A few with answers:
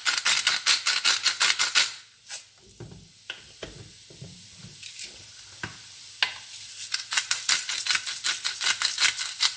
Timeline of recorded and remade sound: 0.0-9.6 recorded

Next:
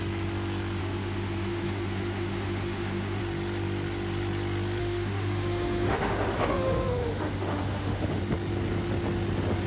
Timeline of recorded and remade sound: 0.0-0.8 recorded; 0.8-3.2 remade; 3.2-4.8 recorded; 4.8-8.2 remade; 8.2-9.7 recorded

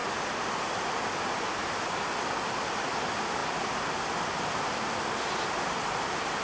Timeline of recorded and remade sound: 0.0-6.4 recorded